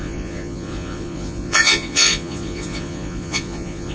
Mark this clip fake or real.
fake